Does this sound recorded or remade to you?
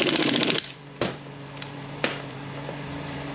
remade